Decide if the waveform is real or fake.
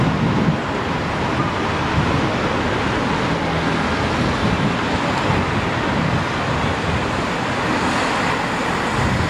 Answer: real